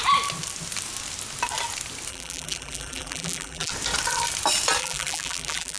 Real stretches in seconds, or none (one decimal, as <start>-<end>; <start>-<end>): 0.0-2.1; 3.7-4.8